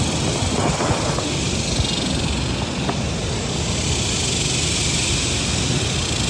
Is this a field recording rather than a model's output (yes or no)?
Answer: yes